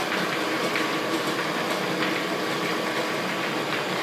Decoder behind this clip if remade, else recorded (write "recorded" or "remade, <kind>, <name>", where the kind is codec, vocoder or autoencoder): recorded